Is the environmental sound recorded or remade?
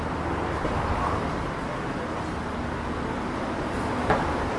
recorded